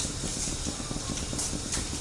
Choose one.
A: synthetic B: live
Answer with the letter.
B